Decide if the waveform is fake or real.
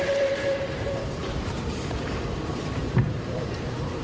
fake